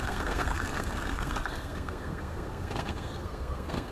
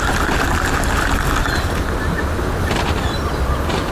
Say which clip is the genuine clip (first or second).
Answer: second